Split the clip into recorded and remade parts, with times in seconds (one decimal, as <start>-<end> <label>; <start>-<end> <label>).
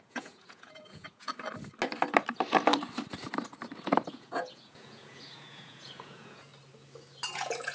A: 0.0-1.3 remade; 1.3-4.1 recorded; 4.1-6.5 remade; 6.5-7.3 recorded; 7.3-7.7 remade